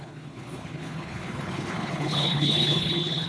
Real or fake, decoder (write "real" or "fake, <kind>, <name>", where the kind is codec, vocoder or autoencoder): fake, codec, HILCodec